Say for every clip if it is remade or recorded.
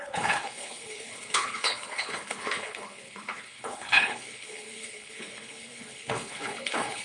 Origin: remade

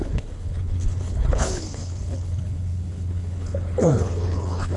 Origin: remade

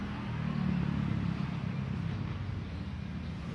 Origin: recorded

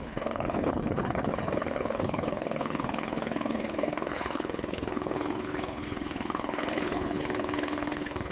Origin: remade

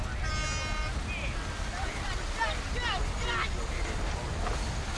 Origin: recorded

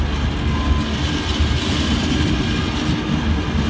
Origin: recorded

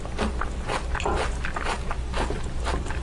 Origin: recorded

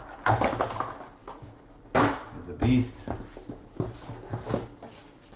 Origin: recorded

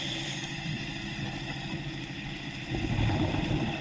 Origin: recorded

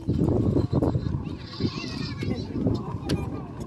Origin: recorded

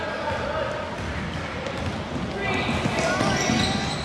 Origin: recorded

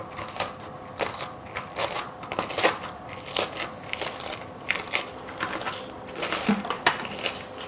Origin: recorded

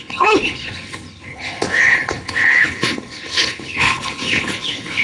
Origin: remade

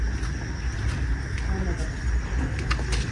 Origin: recorded